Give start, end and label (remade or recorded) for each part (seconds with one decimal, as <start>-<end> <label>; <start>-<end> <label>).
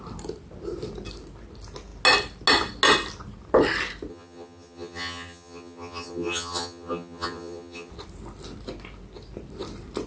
0.0-4.1 recorded; 4.1-7.9 remade; 7.9-10.1 recorded